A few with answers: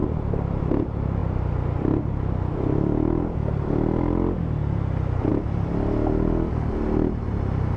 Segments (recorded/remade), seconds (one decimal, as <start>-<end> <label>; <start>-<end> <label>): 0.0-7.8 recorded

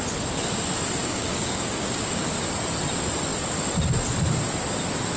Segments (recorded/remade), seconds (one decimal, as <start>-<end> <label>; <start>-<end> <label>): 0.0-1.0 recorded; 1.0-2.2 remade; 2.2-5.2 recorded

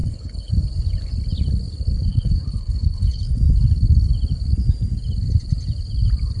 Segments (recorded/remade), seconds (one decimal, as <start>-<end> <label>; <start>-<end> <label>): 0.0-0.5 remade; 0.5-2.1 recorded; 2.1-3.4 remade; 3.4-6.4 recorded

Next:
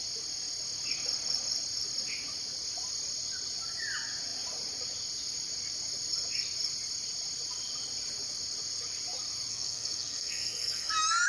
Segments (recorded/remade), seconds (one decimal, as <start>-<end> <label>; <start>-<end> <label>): 0.0-9.5 recorded; 9.5-10.9 remade; 10.9-11.3 recorded

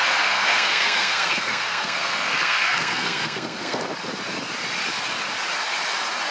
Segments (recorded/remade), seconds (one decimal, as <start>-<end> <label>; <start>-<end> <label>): 0.0-3.8 remade; 3.8-6.3 recorded

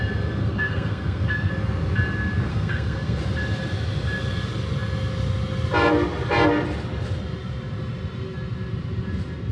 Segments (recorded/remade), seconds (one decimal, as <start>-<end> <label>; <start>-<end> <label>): 0.0-0.4 recorded; 0.4-1.5 remade; 1.5-2.5 recorded; 2.5-3.2 remade; 3.2-9.5 recorded

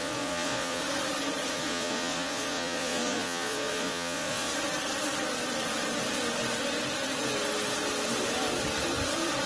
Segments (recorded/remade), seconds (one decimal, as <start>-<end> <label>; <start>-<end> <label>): 0.0-0.8 remade; 0.8-1.5 recorded; 1.5-4.5 remade; 4.5-9.5 recorded